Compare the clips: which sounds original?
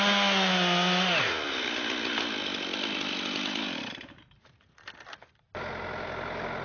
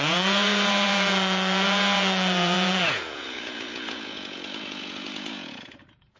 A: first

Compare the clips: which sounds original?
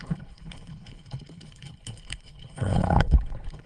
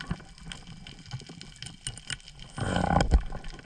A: second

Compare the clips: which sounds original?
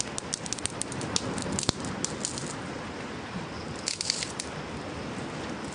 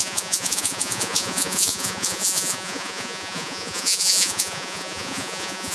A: first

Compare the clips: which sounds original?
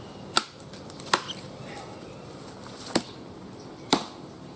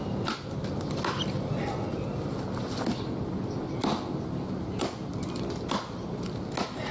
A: second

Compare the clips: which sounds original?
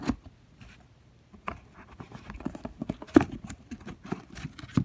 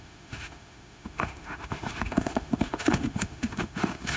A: first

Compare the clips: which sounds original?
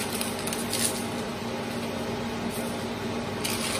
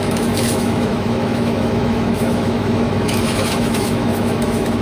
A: first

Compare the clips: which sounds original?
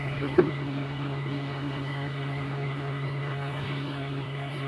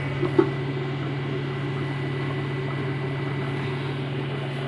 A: second